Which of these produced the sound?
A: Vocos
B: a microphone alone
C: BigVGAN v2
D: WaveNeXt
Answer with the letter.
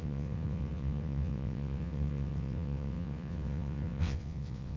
D